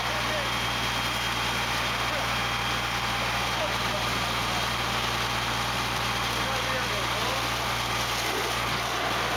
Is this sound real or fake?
real